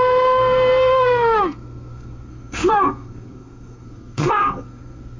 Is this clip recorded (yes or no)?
no